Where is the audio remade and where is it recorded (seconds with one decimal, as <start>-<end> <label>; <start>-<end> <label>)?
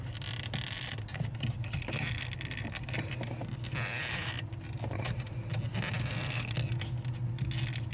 0.0-7.9 recorded